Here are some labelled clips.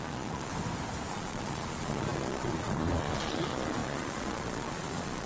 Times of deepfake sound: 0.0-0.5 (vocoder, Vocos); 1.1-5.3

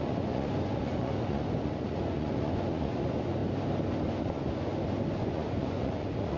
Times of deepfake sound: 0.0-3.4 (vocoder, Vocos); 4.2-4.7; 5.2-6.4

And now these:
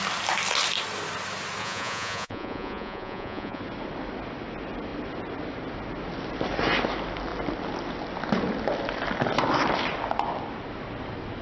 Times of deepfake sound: 1.6-3.6 (vocoder, Vocos)

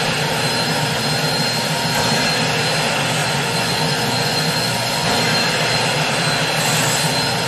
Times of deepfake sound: 3.2-5.2 (vocoder, Vocos)